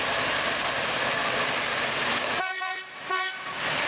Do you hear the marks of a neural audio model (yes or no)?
no